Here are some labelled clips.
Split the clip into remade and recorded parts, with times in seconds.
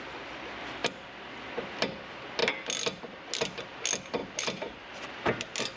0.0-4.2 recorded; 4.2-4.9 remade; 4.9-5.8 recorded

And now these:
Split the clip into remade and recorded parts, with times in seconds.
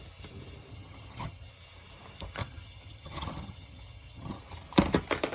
0.0-0.7 recorded; 0.7-1.5 remade; 1.5-2.4 recorded; 2.4-4.4 remade; 4.4-5.3 recorded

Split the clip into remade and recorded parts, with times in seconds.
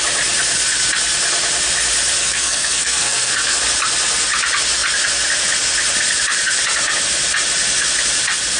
0.0-2.2 recorded; 2.2-3.6 remade; 3.6-8.6 recorded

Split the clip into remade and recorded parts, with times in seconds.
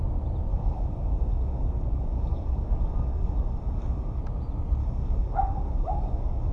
0.0-0.5 recorded; 0.5-4.2 remade; 4.2-4.8 recorded; 4.8-6.5 remade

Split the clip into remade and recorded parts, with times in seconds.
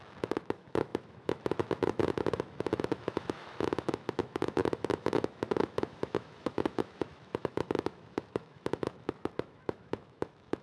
0.0-10.6 remade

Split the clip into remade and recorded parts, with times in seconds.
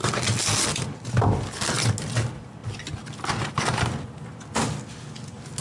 0.0-5.6 recorded